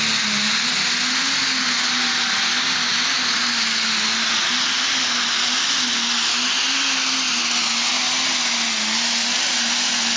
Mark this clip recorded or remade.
recorded